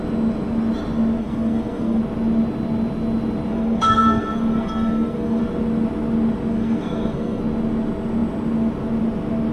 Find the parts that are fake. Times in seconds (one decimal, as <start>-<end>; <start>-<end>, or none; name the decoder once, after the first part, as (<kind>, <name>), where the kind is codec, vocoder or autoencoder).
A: 1.2-2.0 (codec, SNAC); 3.5-5.4; 6.5-7.4